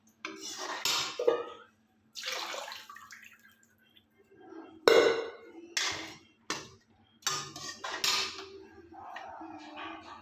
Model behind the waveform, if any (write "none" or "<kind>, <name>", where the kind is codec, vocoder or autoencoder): none